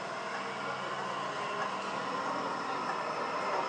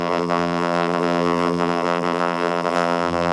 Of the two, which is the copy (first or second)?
second